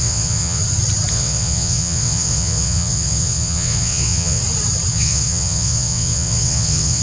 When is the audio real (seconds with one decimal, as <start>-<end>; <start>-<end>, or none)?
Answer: 0.6-1.1; 4.4-4.9